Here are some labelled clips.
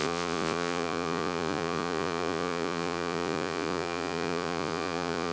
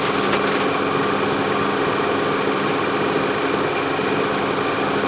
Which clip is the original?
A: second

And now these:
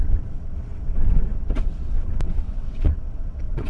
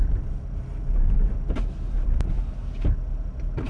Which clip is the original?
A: second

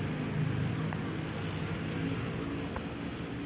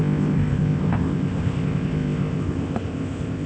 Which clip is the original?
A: first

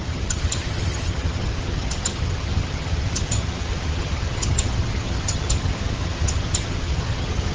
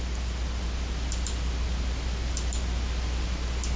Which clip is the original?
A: second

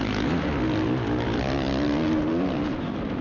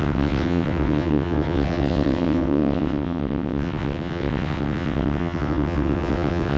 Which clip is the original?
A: first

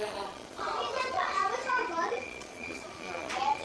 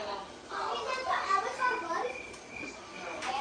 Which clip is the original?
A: second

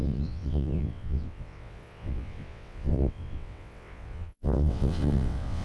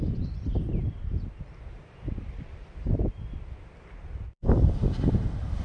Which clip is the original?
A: second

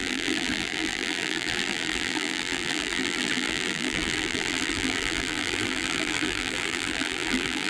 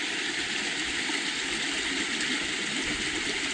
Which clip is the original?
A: second